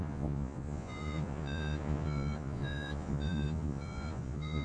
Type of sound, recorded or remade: remade